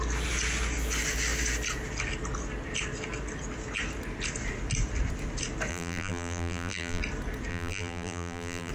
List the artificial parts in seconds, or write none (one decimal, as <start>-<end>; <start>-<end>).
5.7-7.0; 7.5-8.7

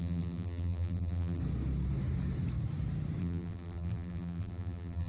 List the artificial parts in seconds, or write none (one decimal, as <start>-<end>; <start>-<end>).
0.0-1.4; 3.2-5.1

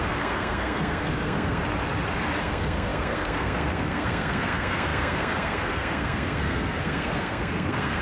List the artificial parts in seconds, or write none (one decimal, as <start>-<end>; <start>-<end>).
0.0-1.6; 2.4-8.0

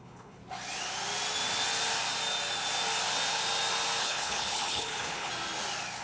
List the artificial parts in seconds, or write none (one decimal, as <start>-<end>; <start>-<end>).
0.0-0.4; 4.0-5.3

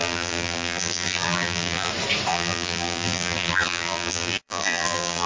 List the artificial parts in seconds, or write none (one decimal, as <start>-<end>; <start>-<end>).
0.0-1.9; 2.3-5.3